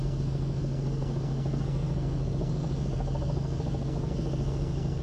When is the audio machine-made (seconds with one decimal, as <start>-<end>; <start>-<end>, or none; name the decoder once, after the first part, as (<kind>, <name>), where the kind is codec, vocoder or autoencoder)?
0.0-5.0 (codec, SNAC)